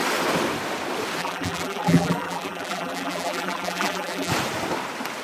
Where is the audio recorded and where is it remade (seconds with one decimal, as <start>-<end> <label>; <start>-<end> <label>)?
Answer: 0.0-1.2 recorded; 1.2-4.3 remade; 4.3-5.2 recorded

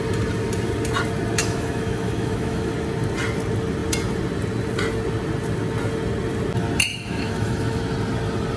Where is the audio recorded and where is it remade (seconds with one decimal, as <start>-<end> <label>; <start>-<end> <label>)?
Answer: 0.0-1.4 recorded; 1.4-2.7 remade; 2.7-6.9 recorded; 6.9-7.8 remade; 7.8-8.6 recorded

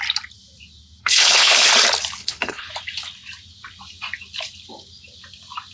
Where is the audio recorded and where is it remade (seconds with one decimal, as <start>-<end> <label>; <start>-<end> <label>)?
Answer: 0.0-1.0 recorded; 1.0-1.7 remade; 1.7-2.2 recorded; 2.2-2.7 remade; 2.7-5.7 recorded

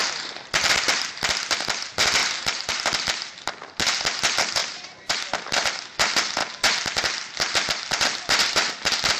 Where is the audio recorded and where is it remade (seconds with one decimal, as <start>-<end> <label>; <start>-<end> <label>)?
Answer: 0.0-0.9 remade; 0.9-2.2 recorded; 2.2-2.7 remade; 2.7-4.6 recorded; 4.6-5.1 remade; 5.1-9.2 recorded

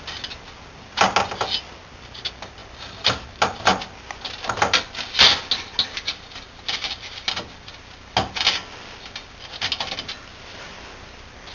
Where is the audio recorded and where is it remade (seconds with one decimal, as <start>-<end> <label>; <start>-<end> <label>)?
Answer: 0.0-11.5 recorded